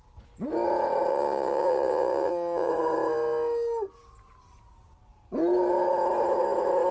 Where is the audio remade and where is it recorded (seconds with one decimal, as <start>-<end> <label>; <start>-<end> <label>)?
0.0-1.1 recorded; 1.1-2.7 remade; 2.7-6.9 recorded